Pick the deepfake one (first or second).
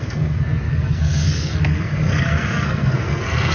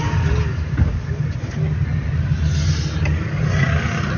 first